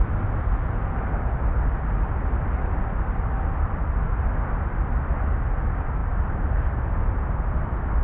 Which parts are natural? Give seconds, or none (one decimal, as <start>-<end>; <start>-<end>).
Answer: 0.0-8.0